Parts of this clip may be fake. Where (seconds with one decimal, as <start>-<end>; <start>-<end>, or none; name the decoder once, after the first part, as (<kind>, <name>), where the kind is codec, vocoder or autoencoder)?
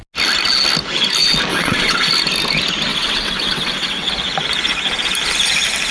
1.5-2.1 (vocoder, WaveNeXt); 2.9-4.1